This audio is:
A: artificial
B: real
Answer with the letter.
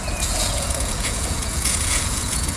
A